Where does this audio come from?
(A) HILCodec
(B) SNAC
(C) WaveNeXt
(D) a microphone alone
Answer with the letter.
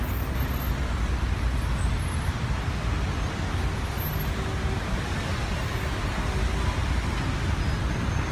D